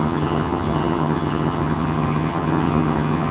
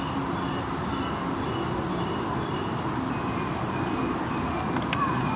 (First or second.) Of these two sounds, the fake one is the first